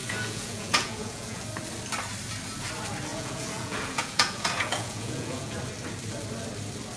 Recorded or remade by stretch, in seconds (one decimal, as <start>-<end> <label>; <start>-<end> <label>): 0.0-1.4 remade; 1.4-3.1 recorded; 3.1-5.6 remade; 5.6-7.0 recorded